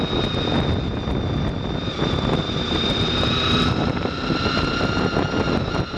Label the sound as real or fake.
real